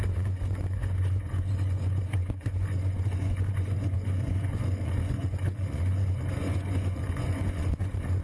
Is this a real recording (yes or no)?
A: no